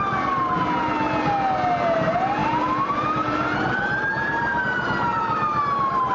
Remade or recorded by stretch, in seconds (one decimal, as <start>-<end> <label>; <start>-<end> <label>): 0.0-2.4 recorded; 2.4-4.6 remade; 4.6-5.1 recorded; 5.1-5.6 remade; 5.6-6.1 recorded